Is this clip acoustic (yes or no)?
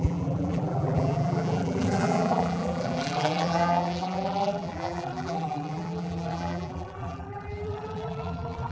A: no